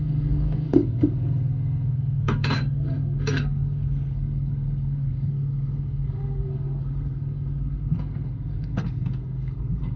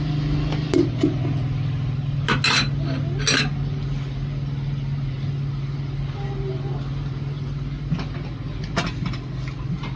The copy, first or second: first